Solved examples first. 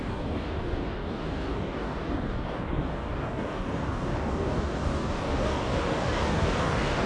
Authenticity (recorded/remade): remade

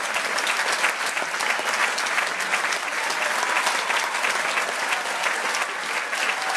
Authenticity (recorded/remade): recorded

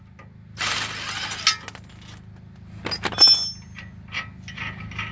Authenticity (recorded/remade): recorded